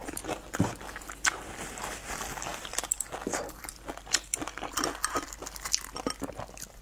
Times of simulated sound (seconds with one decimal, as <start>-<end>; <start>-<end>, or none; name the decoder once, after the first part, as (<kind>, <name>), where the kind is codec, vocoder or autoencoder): 2.5-3.6 (vocoder, BigVGAN v2)

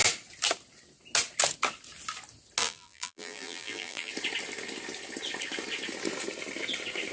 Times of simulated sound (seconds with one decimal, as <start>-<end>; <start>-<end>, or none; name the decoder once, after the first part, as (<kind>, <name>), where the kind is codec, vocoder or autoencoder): 2.6-4.1 (vocoder, BigVGAN v2)